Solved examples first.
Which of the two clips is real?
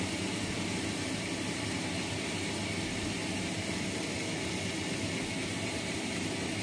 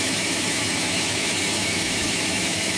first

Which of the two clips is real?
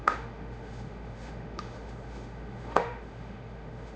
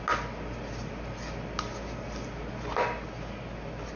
second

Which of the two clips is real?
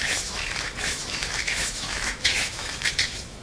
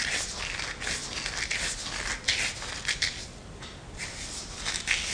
second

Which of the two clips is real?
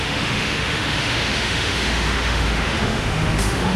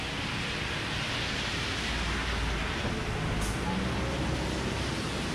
second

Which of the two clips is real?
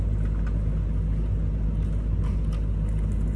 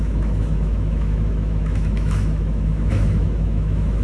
first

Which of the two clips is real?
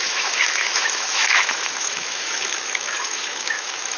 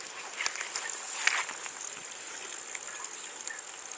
second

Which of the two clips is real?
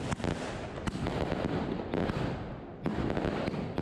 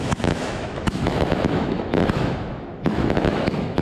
first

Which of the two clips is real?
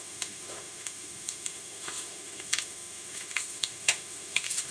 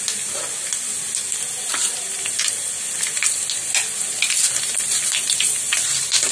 second